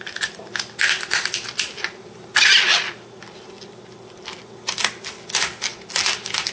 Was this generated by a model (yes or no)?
no